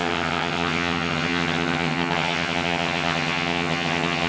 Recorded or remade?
remade